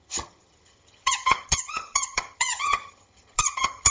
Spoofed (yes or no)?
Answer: yes